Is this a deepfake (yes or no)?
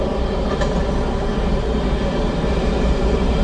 no